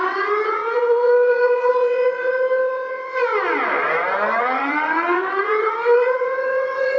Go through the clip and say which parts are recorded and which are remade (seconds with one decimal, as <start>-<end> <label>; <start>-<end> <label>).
0.0-3.3 remade; 3.3-4.4 recorded; 4.4-7.0 remade